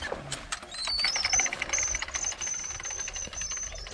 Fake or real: real